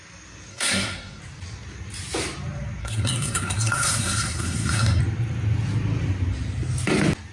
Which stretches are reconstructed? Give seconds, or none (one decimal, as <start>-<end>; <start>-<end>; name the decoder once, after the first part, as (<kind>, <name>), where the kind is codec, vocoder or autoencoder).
0.5-1.2 (codec, SNAC); 2.8-5.0